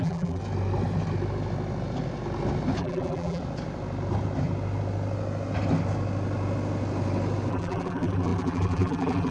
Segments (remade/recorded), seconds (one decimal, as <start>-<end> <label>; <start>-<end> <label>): 0.0-0.4 remade; 0.4-2.8 recorded; 2.8-3.4 remade; 3.4-7.5 recorded; 7.5-9.3 remade